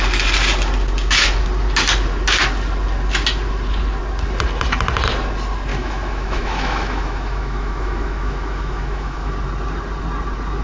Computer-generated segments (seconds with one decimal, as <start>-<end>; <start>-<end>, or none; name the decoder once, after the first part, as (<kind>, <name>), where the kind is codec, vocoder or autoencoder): 5.7-9.3 (autoencoder, DAC-VAE)